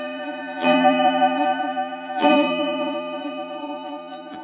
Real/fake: fake